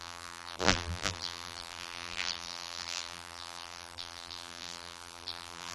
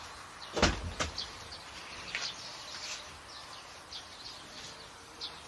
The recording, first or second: second